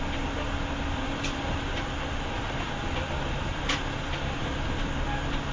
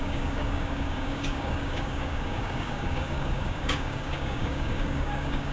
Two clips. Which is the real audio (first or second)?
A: first